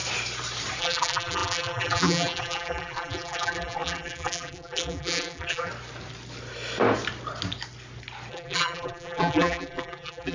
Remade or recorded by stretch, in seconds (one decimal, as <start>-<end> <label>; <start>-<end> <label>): 0.0-0.8 recorded; 0.8-5.7 remade; 5.7-8.3 recorded; 8.3-10.3 remade